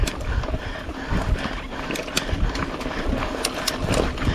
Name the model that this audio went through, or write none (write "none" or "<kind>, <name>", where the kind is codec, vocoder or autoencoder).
none